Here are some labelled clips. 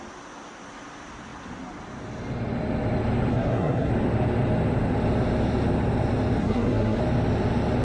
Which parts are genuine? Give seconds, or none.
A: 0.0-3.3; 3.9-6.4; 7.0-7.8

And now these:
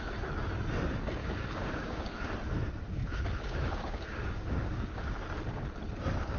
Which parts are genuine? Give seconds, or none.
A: 0.0-1.2; 2.3-2.9; 5.1-6.4

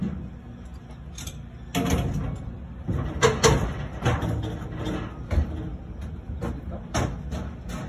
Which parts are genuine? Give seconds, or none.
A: 0.0-7.9

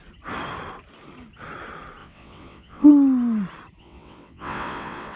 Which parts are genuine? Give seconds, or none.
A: 0.0-2.0; 2.9-3.8

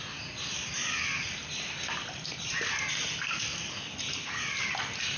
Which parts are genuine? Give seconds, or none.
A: 0.0-5.2

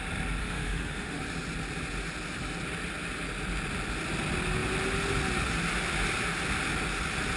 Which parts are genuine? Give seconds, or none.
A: 0.0-0.4; 1.2-7.4

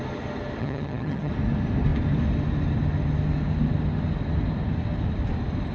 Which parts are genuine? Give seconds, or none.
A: 0.0-0.6; 1.3-5.7

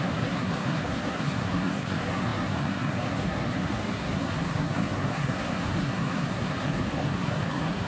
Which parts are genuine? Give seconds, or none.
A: none